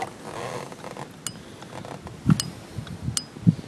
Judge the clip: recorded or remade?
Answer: recorded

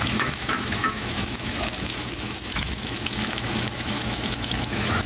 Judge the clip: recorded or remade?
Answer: remade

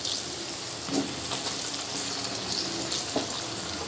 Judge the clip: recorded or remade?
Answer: recorded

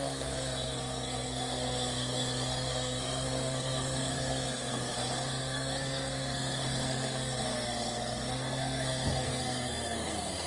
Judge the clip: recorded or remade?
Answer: remade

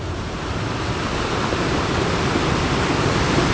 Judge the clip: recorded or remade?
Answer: recorded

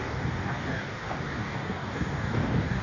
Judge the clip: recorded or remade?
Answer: remade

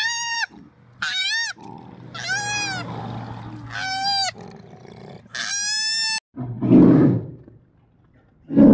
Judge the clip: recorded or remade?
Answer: recorded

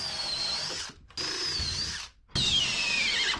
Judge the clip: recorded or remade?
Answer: recorded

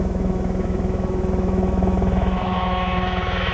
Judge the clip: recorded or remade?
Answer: remade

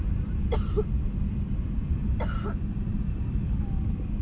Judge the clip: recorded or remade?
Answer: recorded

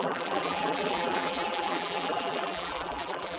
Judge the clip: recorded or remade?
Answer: remade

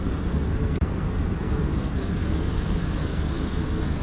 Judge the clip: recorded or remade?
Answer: remade